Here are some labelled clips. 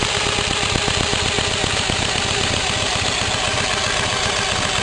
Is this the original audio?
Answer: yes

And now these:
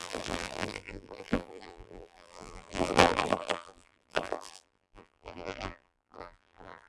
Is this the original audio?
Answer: no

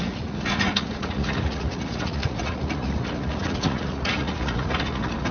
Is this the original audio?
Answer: no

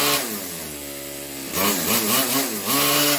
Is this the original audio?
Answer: yes